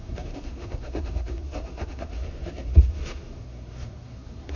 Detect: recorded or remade remade